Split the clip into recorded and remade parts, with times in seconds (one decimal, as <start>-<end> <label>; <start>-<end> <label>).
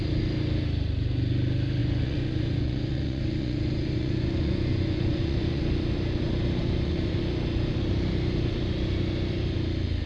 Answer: 0.0-1.8 recorded; 1.8-5.6 remade; 5.6-6.6 recorded; 6.6-7.2 remade; 7.2-10.1 recorded